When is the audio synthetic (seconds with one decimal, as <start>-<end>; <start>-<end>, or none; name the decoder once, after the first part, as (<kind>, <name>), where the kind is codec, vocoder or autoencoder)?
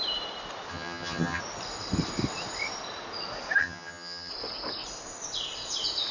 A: 0.7-1.4 (vocoder, HiFi-GAN); 3.6-4.3